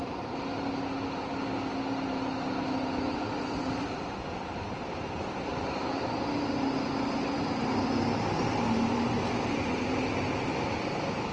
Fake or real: real